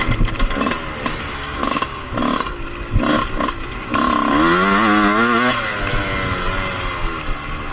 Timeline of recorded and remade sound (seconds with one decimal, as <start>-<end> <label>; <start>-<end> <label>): 0.0-1.1 recorded; 1.1-2.1 remade; 2.1-7.7 recorded